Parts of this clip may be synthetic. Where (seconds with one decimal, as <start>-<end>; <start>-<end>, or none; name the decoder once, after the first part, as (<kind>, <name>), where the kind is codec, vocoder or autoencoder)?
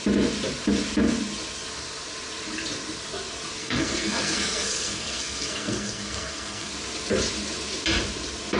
3.6-6.7 (codec, SNAC)